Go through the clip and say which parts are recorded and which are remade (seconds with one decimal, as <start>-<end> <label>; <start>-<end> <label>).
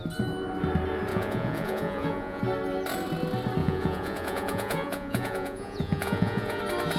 0.0-1.1 recorded; 1.1-2.4 remade; 2.4-3.6 recorded; 3.6-6.6 remade; 6.6-7.0 recorded